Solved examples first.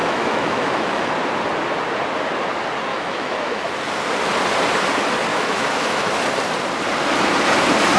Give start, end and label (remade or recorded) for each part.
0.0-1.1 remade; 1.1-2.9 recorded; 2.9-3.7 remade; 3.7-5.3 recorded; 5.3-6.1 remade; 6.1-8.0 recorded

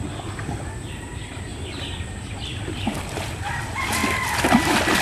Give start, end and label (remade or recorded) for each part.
0.0-5.0 recorded

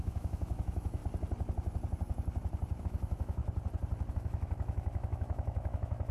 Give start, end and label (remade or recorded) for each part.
0.0-1.0 remade; 1.0-2.8 recorded; 2.8-3.4 remade; 3.4-4.1 recorded; 4.1-6.1 remade

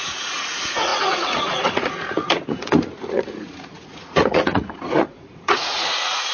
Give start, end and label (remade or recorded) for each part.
0.0-6.3 remade

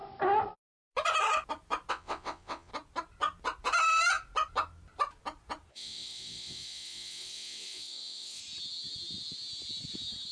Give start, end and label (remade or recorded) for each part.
0.0-1.9 recorded; 1.9-2.7 remade; 2.7-5.7 recorded; 5.7-8.4 remade; 8.4-10.3 recorded

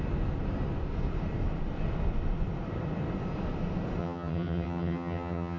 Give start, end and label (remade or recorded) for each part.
0.0-4.0 recorded; 4.0-5.6 remade

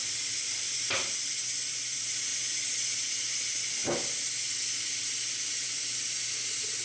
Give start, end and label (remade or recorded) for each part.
0.0-2.3 remade; 2.3-3.4 recorded; 3.4-3.8 remade; 3.8-5.5 recorded; 5.5-6.8 remade